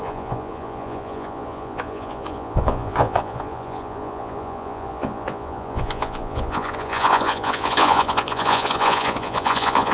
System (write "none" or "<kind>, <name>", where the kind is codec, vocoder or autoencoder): vocoder, Vocos